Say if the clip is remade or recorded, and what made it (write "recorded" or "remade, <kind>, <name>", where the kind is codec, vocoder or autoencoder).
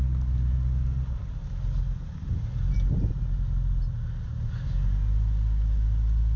recorded